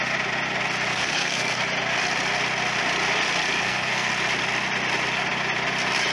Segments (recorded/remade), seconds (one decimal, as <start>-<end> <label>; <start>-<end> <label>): 0.0-0.9 recorded; 0.9-1.6 remade; 1.6-3.6 recorded; 3.6-4.1 remade; 4.1-6.1 recorded